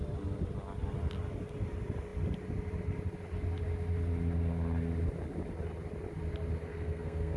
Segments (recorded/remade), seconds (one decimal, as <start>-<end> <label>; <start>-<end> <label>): 0.0-6.7 recorded; 6.7-7.4 remade

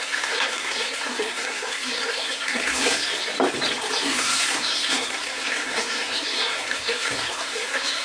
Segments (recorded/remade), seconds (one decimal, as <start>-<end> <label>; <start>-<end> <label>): 0.0-3.1 remade; 3.1-4.0 recorded; 4.0-8.0 remade

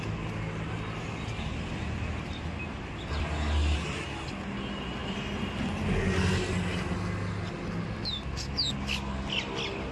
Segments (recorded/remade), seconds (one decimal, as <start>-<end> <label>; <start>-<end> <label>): 0.0-9.9 recorded

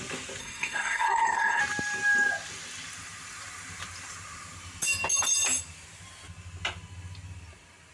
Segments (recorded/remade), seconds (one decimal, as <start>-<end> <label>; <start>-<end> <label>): 0.0-0.4 recorded; 0.4-1.6 remade; 1.6-7.9 recorded

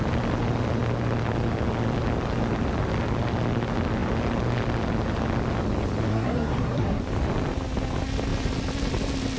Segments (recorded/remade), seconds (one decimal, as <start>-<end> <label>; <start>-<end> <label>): 0.0-6.1 recorded; 6.1-7.0 remade; 7.0-9.4 recorded

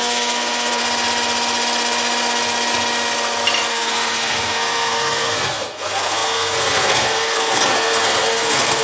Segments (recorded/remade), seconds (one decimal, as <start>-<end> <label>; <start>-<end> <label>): 0.0-0.8 remade; 0.8-3.7 recorded; 3.7-8.8 remade

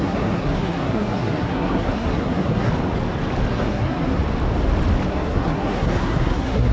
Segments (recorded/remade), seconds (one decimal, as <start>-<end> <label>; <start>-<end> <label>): 0.0-2.7 remade; 2.7-3.5 recorded; 3.5-4.2 remade; 4.2-5.1 recorded; 5.1-6.7 remade